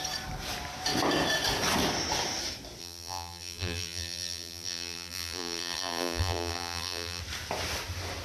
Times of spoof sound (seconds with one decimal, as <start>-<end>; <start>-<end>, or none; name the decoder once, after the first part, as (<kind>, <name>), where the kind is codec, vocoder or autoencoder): 2.8-7.2 (vocoder, BigVGAN v2)